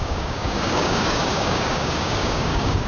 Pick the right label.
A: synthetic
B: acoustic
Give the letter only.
A